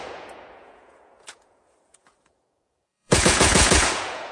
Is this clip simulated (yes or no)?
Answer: yes